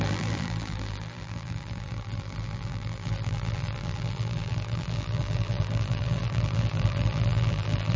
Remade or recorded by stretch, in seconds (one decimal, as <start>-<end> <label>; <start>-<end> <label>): 0.0-8.0 remade

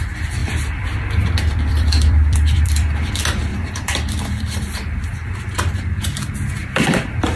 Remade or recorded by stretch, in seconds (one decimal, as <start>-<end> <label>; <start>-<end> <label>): 0.0-0.4 recorded; 0.4-3.1 remade; 3.1-3.5 recorded; 3.5-5.5 remade; 5.5-6.6 recorded; 6.6-7.4 remade

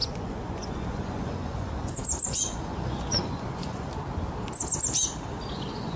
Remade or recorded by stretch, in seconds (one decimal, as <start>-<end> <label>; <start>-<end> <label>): 0.0-3.9 remade; 3.9-5.5 recorded; 5.5-6.0 remade

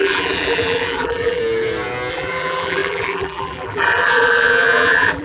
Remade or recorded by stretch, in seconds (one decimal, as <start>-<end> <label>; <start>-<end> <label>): 0.0-1.4 remade; 1.4-2.1 recorded; 2.1-5.2 remade